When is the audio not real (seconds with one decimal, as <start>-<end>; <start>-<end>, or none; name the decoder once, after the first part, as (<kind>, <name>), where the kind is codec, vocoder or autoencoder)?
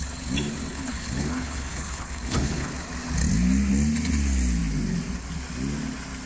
0.7-2.7 (codec, HILCodec)